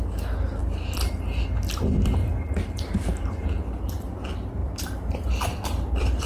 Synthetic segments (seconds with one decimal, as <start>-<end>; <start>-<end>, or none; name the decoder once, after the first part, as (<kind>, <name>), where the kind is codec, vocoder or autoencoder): 0.6-1.2 (vocoder, BigVGAN v2); 4.6-6.3